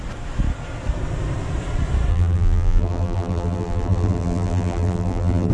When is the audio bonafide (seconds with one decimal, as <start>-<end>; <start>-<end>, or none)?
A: 0.0-2.1

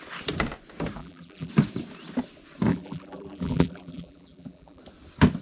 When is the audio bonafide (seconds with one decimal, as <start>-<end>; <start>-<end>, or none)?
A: 0.0-1.0; 1.5-2.7; 4.8-5.4

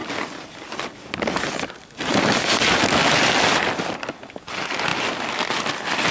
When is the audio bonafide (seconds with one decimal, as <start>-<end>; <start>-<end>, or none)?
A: 0.0-6.1

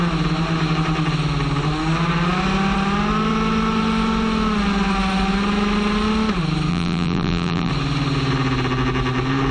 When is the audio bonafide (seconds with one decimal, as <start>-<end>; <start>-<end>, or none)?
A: 0.0-6.7; 7.7-9.5

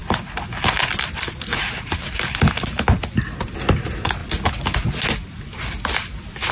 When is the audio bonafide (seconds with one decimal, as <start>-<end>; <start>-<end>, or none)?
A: 0.0-6.5